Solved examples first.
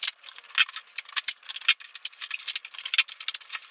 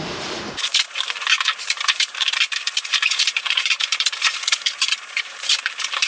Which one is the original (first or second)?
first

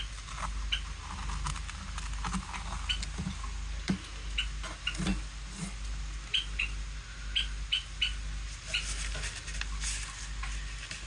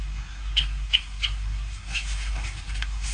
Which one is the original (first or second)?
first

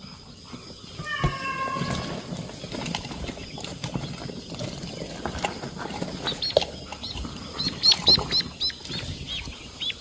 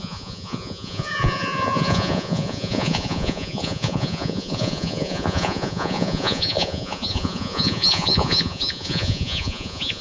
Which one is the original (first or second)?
first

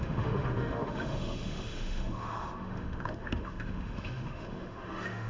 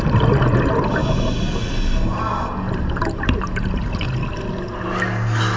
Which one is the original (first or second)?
second